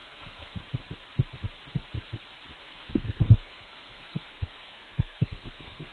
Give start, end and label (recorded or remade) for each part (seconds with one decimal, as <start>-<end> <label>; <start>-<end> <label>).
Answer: 0.0-0.6 remade; 0.6-2.6 recorded; 2.6-5.9 remade